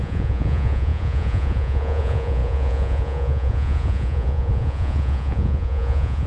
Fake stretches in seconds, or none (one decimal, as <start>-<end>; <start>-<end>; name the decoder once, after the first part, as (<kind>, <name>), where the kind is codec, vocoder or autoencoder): 0.0-6.3 (vocoder, Vocos)